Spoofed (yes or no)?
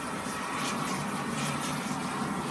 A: no